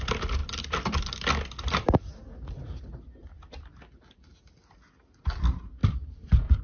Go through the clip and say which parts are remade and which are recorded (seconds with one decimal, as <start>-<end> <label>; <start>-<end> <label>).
0.0-5.8 recorded; 5.8-6.6 remade